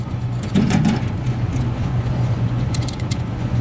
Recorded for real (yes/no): no